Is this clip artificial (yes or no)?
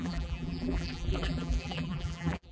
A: yes